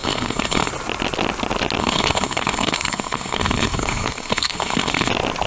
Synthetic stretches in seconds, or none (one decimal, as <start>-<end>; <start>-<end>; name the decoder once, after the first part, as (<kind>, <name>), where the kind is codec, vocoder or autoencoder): 0.0-0.7 (codec, SNAC); 1.8-5.1